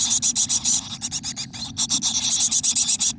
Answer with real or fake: real